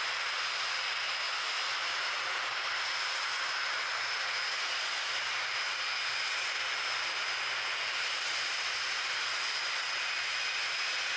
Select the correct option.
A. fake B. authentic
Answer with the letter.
B